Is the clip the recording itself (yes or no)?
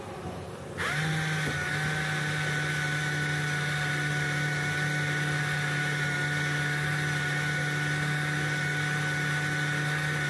yes